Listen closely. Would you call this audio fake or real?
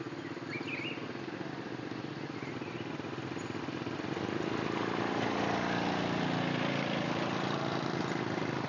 real